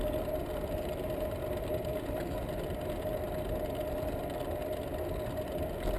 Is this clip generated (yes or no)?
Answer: no